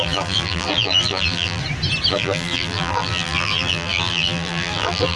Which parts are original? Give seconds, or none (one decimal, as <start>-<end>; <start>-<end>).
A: 1.6-2.1